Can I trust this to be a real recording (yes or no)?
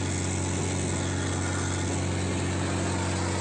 yes